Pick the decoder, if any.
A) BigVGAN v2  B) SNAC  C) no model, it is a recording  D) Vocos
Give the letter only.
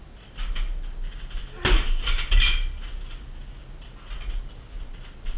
C